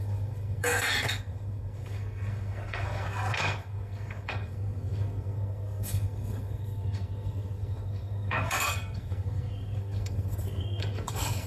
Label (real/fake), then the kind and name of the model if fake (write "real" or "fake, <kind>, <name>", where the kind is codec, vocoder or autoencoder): fake, codec, SNAC